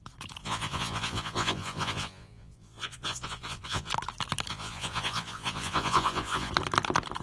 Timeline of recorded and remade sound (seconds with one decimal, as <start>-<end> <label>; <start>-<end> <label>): 0.0-0.4 recorded; 0.4-3.9 remade; 3.9-4.5 recorded; 4.5-6.5 remade; 6.5-7.2 recorded